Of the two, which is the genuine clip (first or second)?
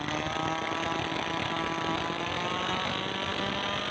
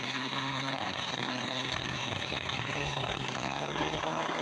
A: first